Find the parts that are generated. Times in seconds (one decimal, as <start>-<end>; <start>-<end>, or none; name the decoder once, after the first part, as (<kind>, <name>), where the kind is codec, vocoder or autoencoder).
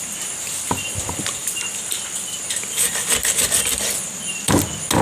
none